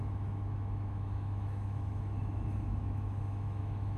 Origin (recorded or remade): remade